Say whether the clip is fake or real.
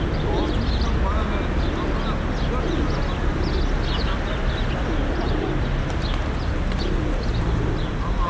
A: real